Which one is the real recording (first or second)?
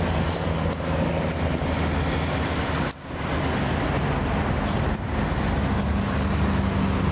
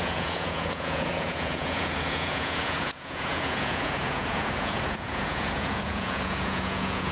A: first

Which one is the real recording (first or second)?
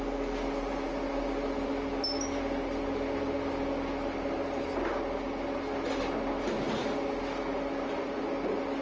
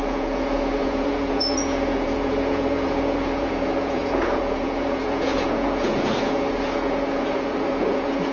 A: first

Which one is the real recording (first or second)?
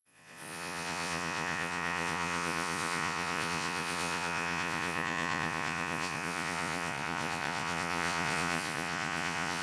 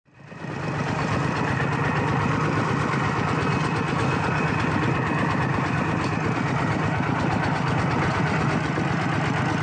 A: second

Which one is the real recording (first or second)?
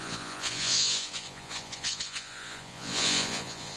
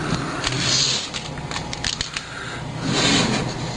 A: second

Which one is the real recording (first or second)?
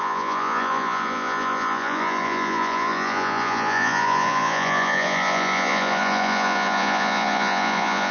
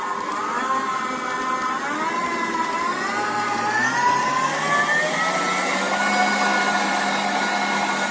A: second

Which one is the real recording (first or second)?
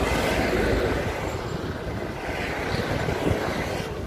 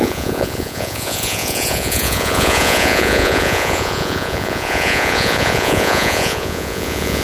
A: first